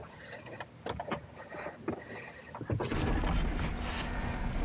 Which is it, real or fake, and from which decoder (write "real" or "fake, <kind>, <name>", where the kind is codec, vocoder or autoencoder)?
real